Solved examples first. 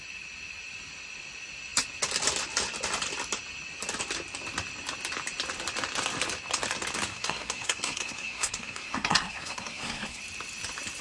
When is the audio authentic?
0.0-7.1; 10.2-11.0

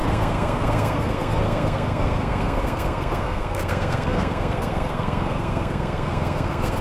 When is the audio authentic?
none